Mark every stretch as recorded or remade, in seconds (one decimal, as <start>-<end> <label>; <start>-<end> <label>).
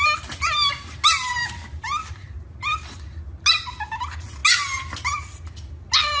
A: 0.0-6.2 recorded